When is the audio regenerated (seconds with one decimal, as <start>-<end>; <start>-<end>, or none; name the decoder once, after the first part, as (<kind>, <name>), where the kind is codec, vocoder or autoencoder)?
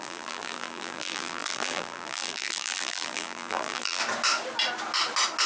0.0-4.0 (vocoder, BigVGAN v2)